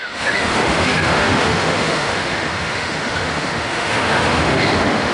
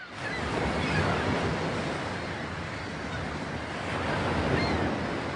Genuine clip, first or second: second